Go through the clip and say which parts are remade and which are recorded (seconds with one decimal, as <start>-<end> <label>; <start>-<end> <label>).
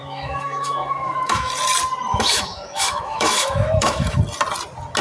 0.0-1.5 remade; 1.5-2.1 recorded; 2.1-4.2 remade; 4.2-5.0 recorded